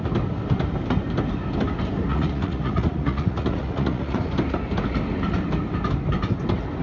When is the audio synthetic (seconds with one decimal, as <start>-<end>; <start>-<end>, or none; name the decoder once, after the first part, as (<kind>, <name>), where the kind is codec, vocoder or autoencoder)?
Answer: 2.1-4.3 (vocoder, Vocos)